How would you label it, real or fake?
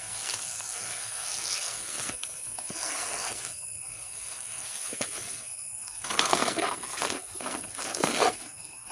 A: fake